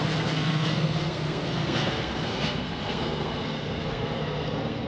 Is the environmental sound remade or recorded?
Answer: remade